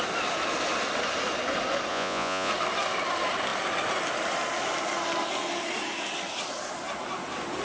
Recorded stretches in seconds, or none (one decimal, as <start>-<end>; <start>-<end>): 0.0-1.9; 2.5-7.6

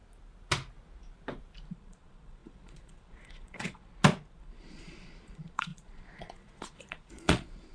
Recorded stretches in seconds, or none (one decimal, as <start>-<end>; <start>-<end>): 0.0-1.7; 3.9-4.4

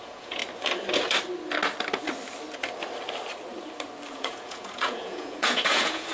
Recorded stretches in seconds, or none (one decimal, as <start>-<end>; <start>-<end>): 0.4-4.1

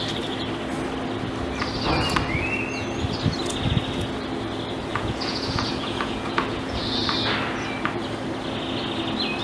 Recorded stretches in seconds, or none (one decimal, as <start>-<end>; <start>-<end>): 0.0-4.9; 6.8-9.4

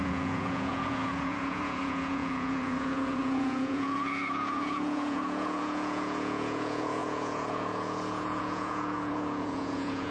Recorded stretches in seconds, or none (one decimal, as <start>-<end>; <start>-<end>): none

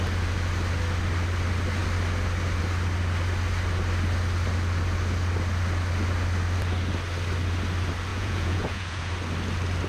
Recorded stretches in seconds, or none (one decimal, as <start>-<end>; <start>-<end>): 0.0-8.1; 9.1-9.9

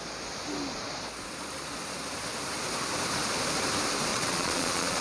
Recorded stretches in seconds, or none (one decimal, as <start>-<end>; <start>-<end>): 0.0-4.1

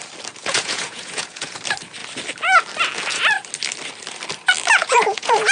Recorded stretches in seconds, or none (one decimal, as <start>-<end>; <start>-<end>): 0.0-0.4; 1.6-4.8